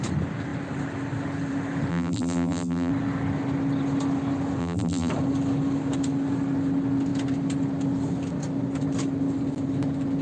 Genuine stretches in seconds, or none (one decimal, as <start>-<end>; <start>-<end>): 0.0-1.9; 2.9-4.6; 5.1-10.2